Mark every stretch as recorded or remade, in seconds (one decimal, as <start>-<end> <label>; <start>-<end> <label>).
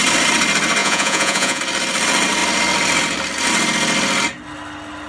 0.0-0.8 recorded; 0.8-1.6 remade; 1.6-5.1 recorded